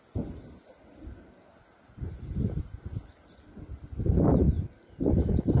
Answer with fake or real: real